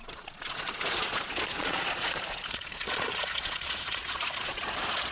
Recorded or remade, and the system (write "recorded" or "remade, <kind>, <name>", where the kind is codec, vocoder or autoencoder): remade, vocoder, Vocos